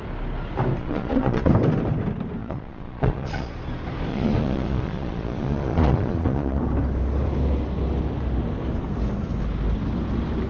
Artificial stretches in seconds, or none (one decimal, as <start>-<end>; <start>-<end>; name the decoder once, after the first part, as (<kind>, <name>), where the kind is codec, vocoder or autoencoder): 0.8-1.5 (vocoder, Vocos); 2.4-3.5; 4.1-6.6